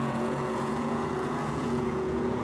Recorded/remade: remade